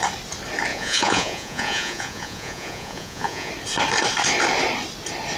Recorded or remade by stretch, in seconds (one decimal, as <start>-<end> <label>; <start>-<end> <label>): 0.0-0.7 recorded; 0.7-3.5 remade; 3.5-5.4 recorded